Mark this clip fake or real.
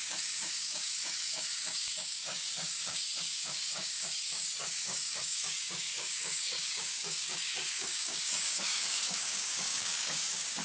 fake